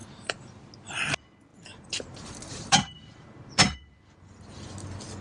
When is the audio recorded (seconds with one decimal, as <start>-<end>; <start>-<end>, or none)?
0.6-1.5; 4.0-5.2